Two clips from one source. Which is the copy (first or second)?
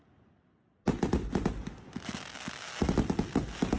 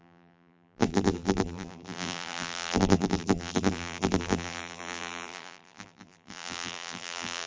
second